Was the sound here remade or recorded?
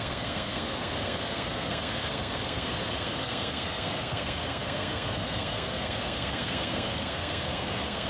remade